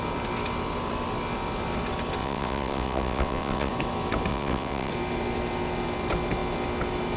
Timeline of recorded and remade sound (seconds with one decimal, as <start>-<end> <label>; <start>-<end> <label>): 0.0-2.2 recorded; 2.2-3.7 remade; 3.7-4.3 recorded; 4.3-4.9 remade; 4.9-7.2 recorded